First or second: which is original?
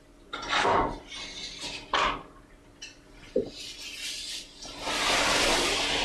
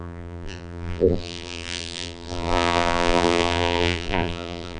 first